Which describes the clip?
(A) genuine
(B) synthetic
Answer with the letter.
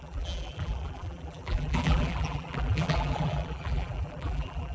B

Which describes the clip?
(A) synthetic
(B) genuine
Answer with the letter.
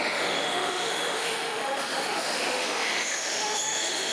A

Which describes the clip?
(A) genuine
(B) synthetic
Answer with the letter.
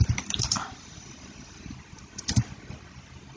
A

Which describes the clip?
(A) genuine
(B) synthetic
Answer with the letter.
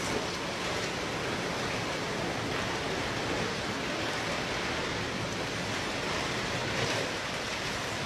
A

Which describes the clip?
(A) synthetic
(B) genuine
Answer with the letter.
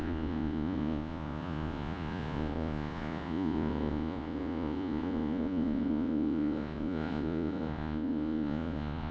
A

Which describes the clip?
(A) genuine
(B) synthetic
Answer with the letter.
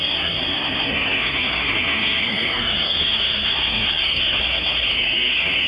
B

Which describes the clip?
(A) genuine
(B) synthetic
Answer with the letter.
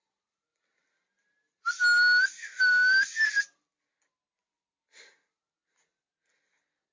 A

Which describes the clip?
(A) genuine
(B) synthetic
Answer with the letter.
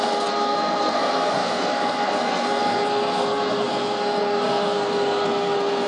B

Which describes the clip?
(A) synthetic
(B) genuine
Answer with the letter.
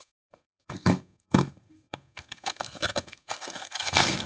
A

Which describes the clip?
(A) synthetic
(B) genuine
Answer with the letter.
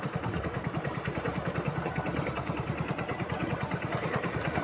A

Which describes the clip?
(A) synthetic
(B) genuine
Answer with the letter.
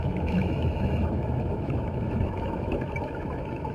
A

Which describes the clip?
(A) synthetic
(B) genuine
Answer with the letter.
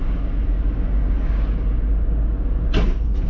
B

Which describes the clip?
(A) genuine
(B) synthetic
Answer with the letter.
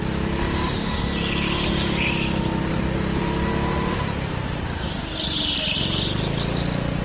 A